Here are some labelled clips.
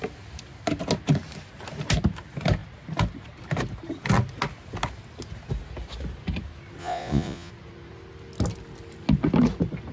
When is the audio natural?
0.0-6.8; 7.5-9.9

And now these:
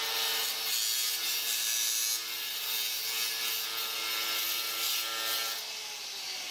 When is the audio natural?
0.0-6.5

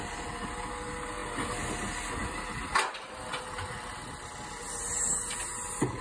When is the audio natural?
0.0-6.0

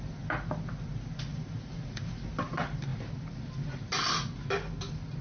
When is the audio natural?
0.0-1.3; 2.4-5.2